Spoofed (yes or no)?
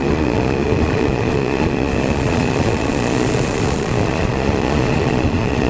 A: yes